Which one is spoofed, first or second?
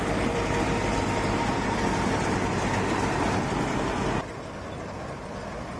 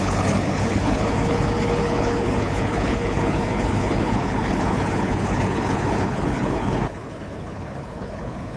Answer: second